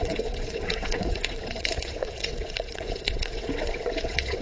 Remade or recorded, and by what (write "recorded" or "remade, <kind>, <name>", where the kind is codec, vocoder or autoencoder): remade, vocoder, WaveNeXt